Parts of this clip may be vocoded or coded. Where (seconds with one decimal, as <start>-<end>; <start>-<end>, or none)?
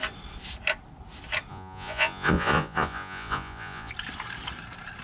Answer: 1.5-3.9